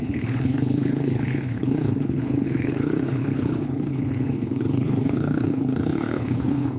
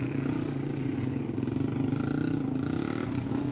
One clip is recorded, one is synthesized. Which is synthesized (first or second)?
first